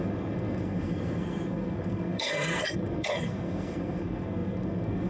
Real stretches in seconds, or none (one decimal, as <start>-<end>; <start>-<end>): none